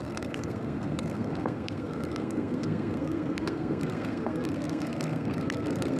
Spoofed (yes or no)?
yes